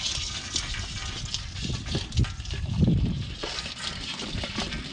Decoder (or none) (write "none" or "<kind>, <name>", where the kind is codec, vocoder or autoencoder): none